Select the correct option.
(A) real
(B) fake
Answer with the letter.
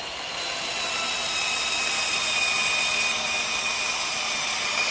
A